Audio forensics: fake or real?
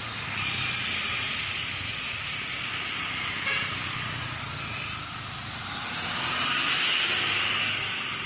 real